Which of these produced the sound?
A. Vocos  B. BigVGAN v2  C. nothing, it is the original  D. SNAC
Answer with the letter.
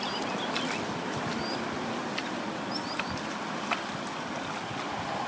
C